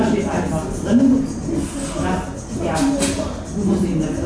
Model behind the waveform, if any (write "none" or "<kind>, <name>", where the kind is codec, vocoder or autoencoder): none